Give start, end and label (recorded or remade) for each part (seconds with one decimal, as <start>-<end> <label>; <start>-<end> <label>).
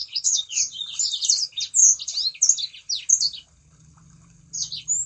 0.0-0.6 remade; 0.6-5.1 recorded